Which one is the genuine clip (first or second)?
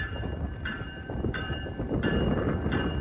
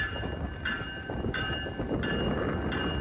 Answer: second